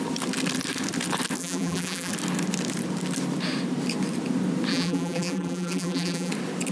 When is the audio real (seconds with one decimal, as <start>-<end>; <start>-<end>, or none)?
0.0-1.4; 2.1-4.7; 6.3-6.7